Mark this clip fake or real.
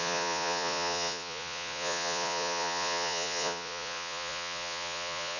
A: fake